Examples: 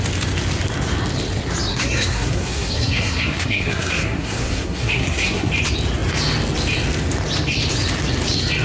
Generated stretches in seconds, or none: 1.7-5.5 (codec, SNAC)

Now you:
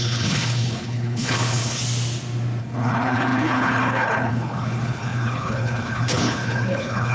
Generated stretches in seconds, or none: 0.0-1.8 (codec, HILCodec); 2.6-7.1

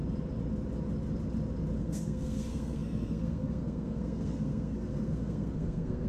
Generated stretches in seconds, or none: 1.8-6.1 (codec, SNAC)

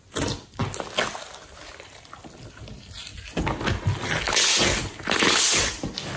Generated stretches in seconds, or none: none

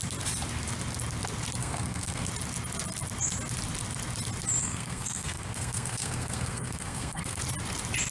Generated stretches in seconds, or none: 1.6-2.3 (codec, SNAC); 4.6-7.4